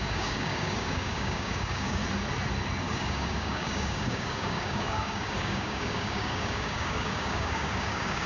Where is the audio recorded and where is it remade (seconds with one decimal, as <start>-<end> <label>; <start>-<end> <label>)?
0.0-2.0 remade; 2.0-2.8 recorded; 2.8-8.3 remade